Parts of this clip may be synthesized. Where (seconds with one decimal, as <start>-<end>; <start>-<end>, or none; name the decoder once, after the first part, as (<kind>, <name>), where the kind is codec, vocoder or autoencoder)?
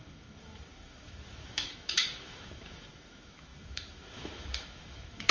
0.0-5.3 (autoencoder, DAC-VAE)